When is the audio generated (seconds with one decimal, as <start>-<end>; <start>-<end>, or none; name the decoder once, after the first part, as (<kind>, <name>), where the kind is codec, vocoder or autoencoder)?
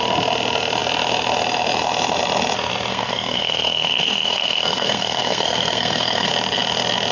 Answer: 2.9-6.3 (codec, SNAC)